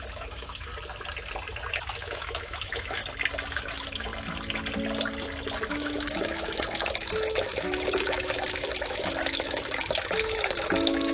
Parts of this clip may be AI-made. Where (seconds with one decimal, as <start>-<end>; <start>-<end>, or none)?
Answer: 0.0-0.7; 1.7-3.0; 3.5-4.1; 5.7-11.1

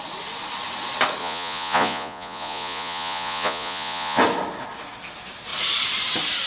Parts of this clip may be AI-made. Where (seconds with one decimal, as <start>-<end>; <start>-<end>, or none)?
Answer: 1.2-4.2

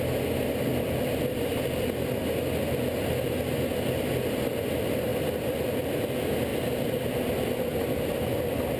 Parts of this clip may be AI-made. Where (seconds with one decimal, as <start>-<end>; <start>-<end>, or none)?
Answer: none

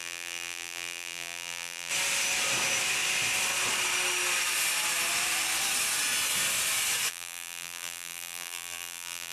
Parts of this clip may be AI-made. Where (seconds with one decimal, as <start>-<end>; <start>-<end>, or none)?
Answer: 0.0-1.9; 7.1-9.3

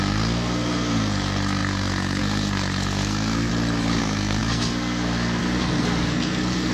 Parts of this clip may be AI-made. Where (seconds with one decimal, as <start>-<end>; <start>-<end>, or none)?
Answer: 0.0-3.5; 4.0-6.7

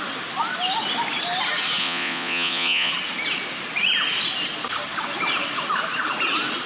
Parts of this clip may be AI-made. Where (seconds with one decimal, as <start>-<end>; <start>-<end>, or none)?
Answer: 1.8-2.9

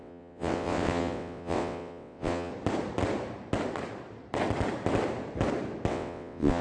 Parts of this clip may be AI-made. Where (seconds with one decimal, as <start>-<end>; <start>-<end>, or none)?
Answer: 0.0-2.5; 5.9-6.6

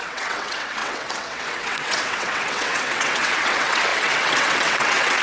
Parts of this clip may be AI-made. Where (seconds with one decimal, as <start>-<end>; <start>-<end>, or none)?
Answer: 0.0-5.2